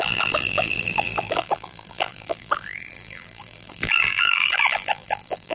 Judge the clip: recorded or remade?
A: remade